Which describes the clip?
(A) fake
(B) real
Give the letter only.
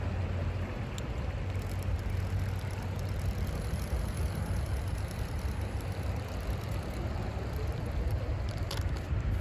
B